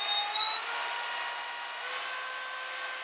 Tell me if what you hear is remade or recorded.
recorded